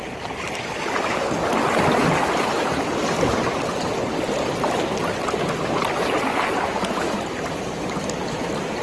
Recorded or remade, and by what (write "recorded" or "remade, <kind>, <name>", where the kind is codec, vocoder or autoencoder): recorded